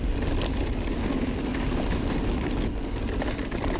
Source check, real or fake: real